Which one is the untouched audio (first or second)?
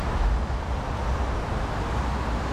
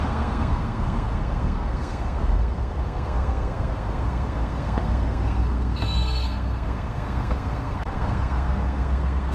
first